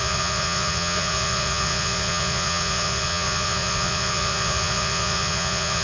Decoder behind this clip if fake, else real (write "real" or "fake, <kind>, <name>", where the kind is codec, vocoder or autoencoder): fake, vocoder, Vocos